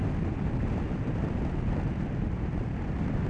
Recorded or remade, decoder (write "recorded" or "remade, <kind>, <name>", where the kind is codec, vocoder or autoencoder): recorded